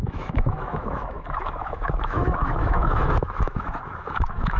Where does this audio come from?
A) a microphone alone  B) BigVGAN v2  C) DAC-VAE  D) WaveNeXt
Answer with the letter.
C